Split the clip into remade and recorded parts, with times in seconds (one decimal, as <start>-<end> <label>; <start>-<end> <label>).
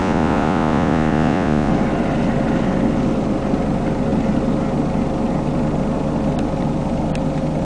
0.0-1.7 remade; 1.7-7.6 recorded